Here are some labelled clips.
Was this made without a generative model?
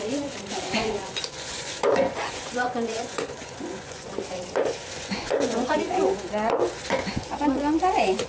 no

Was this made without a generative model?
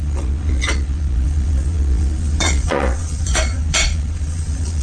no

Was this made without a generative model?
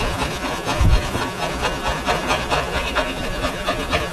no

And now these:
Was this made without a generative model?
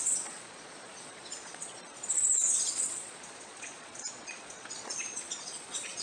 no